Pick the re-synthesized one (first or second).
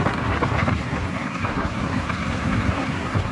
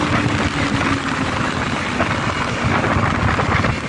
first